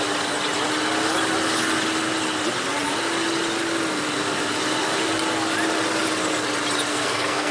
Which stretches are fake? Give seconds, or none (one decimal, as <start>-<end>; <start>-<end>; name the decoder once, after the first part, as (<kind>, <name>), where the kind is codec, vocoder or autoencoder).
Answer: 6.9-7.5 (codec, SNAC)